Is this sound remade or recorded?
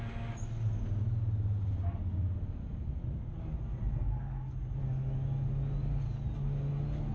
recorded